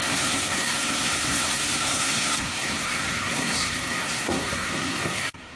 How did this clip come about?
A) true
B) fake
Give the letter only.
B